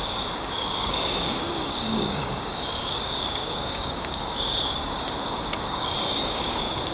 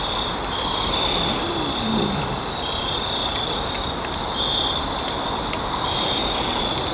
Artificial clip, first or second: first